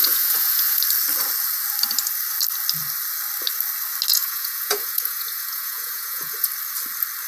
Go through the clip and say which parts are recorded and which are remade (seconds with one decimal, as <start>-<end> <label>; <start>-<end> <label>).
0.0-0.8 remade; 0.8-4.1 recorded; 4.1-6.5 remade; 6.5-7.3 recorded